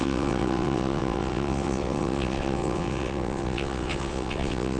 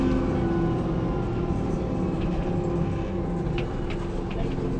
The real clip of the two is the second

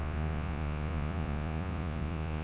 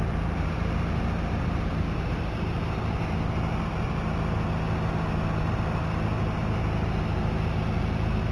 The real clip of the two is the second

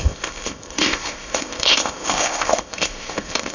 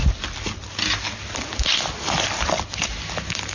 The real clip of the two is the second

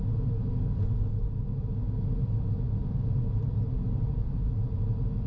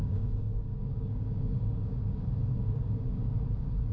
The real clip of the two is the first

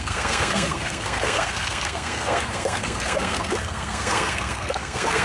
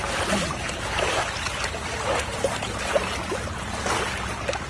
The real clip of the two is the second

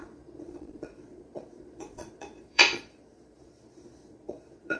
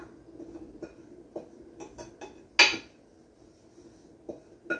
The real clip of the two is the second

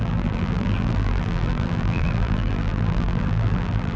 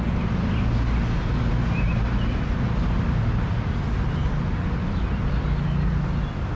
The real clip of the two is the second